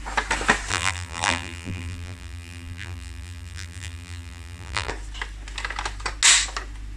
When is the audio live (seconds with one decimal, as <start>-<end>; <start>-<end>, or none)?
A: 0.0-0.7; 4.9-7.0